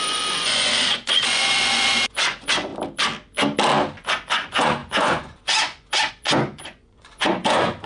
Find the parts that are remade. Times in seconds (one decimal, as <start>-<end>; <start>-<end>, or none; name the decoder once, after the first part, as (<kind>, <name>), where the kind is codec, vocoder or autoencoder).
0.0-2.7 (vocoder, Vocos); 4.0-7.9